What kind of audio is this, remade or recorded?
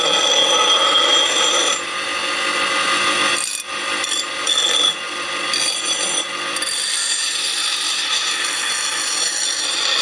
recorded